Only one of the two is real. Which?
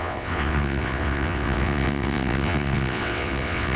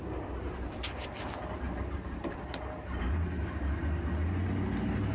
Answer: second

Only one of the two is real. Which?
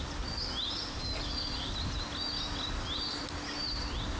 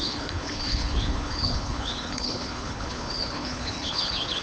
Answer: first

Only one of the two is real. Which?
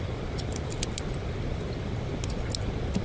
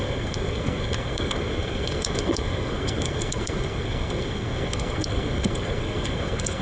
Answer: first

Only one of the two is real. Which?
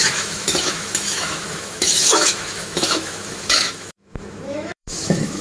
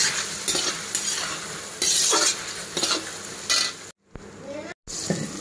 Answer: second